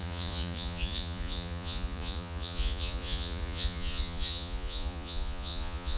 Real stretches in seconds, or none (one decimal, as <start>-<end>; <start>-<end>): none